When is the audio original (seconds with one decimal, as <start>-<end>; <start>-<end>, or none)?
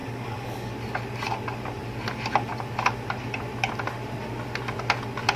0.7-5.4